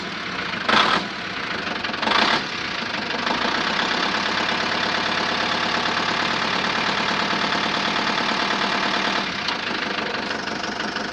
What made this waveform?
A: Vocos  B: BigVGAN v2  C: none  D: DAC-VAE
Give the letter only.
C